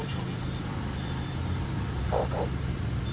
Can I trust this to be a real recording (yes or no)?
no